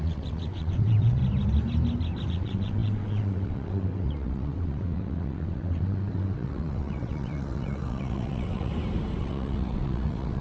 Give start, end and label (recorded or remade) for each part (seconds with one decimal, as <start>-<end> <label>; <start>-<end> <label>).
0.0-1.2 remade; 1.2-2.3 recorded; 2.3-8.7 remade; 8.7-9.2 recorded; 9.2-10.4 remade